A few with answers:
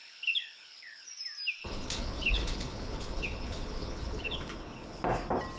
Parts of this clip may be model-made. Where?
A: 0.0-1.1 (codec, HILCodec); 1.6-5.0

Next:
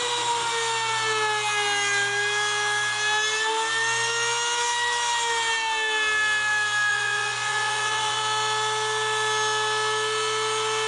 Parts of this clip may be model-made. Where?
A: 6.9-8.2 (vocoder, Vocos)

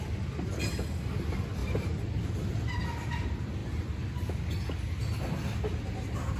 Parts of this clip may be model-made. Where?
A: 1.6-2.6 (vocoder, BigVGAN v2)

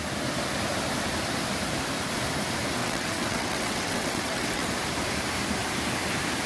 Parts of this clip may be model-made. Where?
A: 2.8-4.7 (vocoder, WaveNeXt)